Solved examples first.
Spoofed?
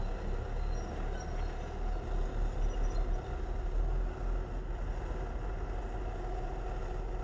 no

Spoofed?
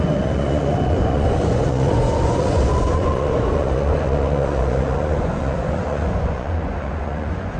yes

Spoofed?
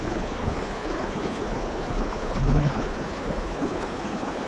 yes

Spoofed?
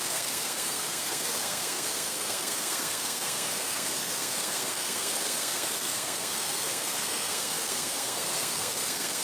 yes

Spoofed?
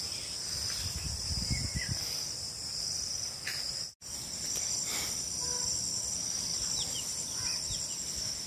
no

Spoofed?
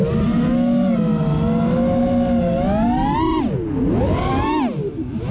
no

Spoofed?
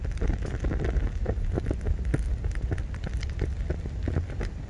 no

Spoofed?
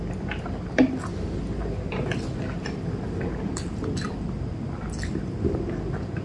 no